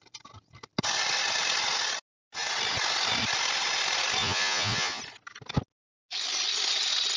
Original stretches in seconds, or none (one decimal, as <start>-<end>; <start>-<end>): 0.0-4.2; 5.0-7.2